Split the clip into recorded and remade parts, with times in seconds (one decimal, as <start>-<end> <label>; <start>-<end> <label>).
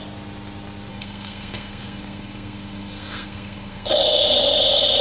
0.0-0.9 recorded; 0.9-3.9 remade; 3.9-5.0 recorded